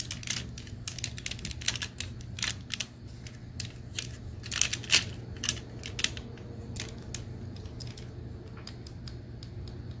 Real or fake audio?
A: real